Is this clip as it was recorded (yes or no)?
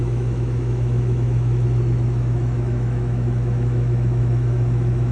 no